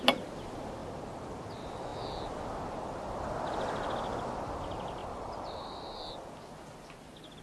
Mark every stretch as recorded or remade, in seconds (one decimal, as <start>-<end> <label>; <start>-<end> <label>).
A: 0.0-5.0 recorded; 5.0-6.0 remade; 6.0-7.4 recorded